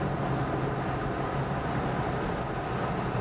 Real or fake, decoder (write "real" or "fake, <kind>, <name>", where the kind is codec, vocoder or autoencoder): real